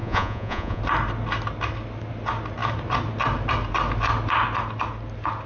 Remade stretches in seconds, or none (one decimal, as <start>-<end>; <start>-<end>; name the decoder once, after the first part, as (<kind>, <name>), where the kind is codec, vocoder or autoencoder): 0.0-0.8 (vocoder, Vocos)

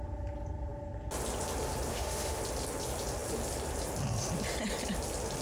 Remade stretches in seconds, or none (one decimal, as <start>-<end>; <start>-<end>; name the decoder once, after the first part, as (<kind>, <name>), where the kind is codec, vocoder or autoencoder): 1.9-2.4 (autoencoder, DAC-VAE)